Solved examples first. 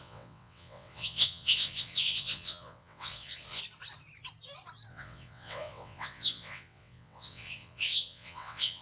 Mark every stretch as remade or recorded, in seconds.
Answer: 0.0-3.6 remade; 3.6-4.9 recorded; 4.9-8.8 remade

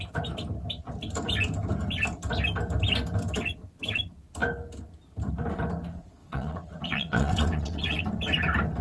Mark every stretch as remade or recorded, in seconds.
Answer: 0.0-6.2 recorded; 6.2-8.0 remade; 8.0-8.8 recorded

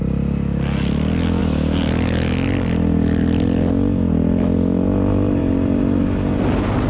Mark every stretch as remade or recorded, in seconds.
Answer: 0.0-6.9 recorded

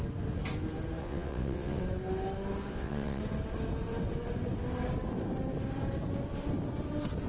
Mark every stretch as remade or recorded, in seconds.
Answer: 0.0-1.0 recorded; 1.0-1.8 remade; 1.8-2.7 recorded; 2.7-3.2 remade; 3.2-7.3 recorded